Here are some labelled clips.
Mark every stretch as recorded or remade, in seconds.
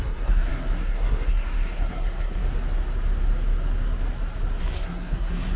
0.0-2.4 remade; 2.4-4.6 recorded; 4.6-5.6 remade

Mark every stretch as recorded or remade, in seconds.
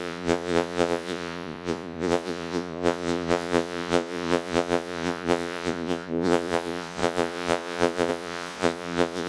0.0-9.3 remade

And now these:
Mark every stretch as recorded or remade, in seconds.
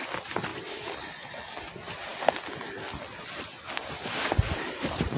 0.0-5.2 recorded